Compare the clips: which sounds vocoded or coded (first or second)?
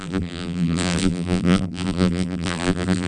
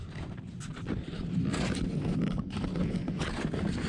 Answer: first